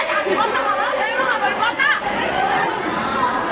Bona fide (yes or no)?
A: no